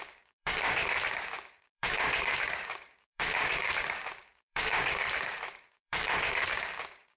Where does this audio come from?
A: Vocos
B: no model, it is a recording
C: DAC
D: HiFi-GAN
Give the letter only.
C